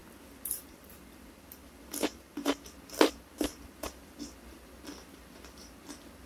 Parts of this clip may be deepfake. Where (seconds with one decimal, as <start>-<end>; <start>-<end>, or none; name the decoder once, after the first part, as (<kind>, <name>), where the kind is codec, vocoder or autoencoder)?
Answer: 0.0-6.3 (vocoder, BigVGAN v2)